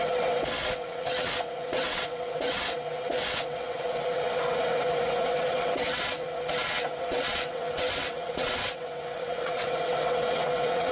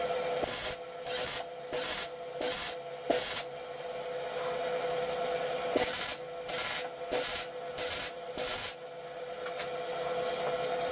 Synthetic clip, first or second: first